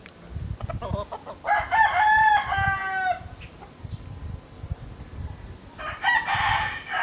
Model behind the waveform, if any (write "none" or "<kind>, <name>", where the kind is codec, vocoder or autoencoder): none